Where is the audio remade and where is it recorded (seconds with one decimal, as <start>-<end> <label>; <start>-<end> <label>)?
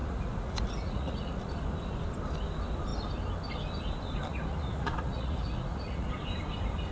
0.0-1.5 remade; 1.5-4.3 recorded; 4.3-6.1 remade; 6.1-6.9 recorded